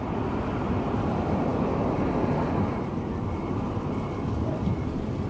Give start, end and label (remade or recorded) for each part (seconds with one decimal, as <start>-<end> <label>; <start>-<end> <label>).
0.0-5.3 recorded